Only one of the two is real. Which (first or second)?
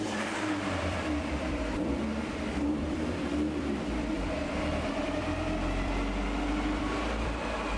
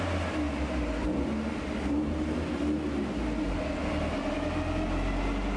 second